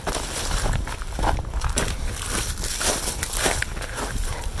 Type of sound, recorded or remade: recorded